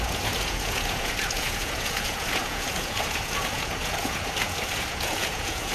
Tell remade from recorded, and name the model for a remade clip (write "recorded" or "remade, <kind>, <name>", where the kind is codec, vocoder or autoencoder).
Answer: remade, vocoder, Vocos